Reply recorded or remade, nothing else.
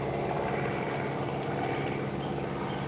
recorded